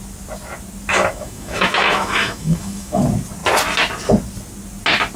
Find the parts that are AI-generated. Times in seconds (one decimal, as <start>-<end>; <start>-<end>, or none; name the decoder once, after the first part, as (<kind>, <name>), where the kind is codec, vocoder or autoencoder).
0.9-3.0 (autoencoder, DAC-VAE)